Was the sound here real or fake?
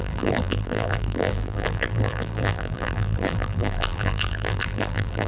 fake